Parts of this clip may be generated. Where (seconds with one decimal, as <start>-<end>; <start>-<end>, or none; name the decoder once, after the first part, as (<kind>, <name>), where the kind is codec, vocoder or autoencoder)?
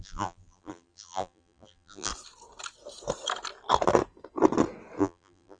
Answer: 0.0-2.1 (vocoder, BigVGAN v2); 5.0-5.6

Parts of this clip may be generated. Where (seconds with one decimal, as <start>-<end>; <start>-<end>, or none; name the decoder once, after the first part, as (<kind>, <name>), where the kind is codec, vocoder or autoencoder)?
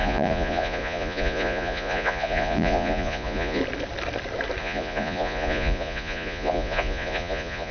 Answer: 0.0-3.6 (vocoder, Vocos); 4.6-7.7